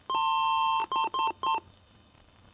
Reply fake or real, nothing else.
real